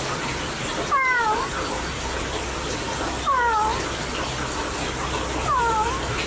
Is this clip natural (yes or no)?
yes